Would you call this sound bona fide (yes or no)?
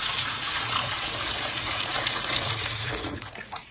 no